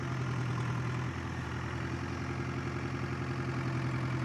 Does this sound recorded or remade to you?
recorded